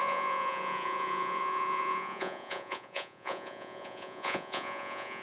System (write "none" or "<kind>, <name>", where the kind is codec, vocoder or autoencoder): vocoder, Vocos